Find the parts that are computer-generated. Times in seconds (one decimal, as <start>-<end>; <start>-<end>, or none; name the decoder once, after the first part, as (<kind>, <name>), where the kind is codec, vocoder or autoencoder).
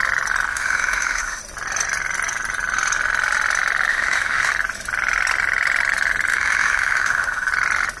0.5-1.4 (autoencoder, DAC-VAE); 3.9-4.5; 6.3-7.5